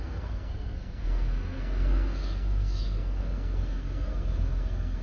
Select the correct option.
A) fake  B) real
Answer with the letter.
A